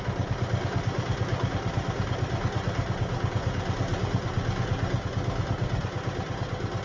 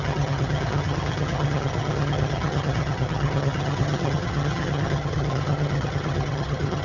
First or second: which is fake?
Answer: second